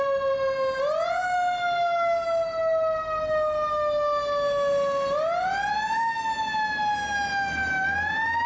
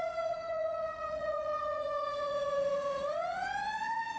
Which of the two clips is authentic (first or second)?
first